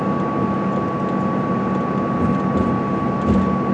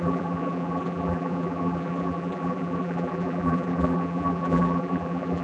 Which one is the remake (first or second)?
second